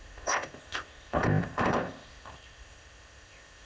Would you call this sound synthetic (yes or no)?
yes